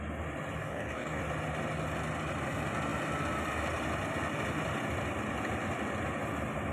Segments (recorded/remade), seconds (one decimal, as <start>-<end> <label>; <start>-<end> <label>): 0.0-0.6 recorded; 0.6-1.2 remade; 1.2-6.7 recorded